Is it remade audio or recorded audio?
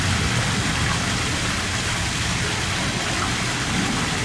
recorded